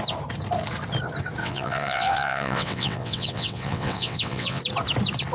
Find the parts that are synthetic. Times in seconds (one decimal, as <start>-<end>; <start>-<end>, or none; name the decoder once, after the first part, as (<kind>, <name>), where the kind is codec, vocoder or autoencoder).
1.4-4.6 (vocoder, WaveNeXt)